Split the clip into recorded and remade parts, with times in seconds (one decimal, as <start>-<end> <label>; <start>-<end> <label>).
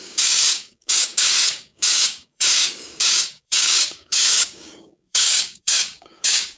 0.0-6.6 remade